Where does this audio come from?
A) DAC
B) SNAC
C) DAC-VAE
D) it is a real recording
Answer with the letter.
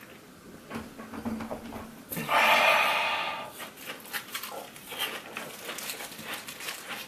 D